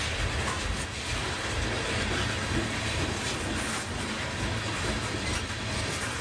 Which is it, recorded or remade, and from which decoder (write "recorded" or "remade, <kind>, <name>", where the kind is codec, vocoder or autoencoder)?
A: recorded